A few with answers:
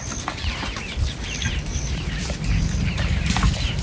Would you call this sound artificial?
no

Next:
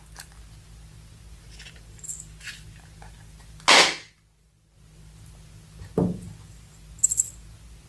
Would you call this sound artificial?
no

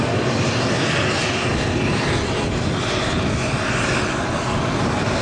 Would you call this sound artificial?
no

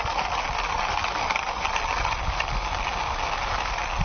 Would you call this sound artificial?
no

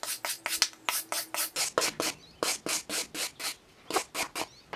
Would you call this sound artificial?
no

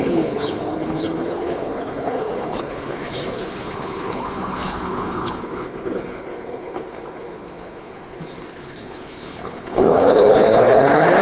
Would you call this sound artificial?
yes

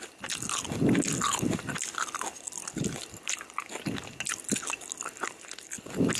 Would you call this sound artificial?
no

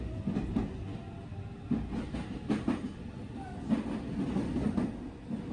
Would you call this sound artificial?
no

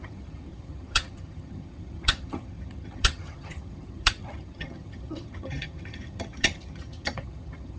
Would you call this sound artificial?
yes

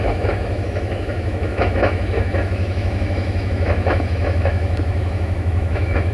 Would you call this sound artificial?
yes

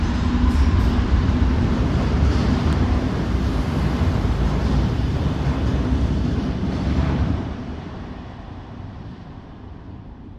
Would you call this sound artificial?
yes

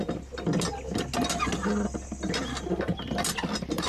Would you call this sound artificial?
no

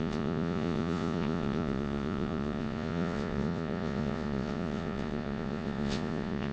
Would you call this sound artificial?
yes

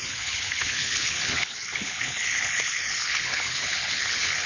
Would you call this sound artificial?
yes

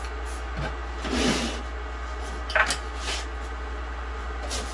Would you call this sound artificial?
no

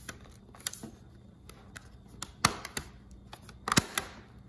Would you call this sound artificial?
no